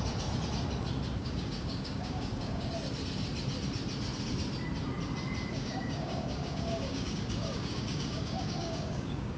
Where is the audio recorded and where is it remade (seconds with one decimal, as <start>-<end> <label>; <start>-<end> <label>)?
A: 0.0-1.2 recorded; 1.2-2.7 remade; 2.7-5.5 recorded; 5.5-9.4 remade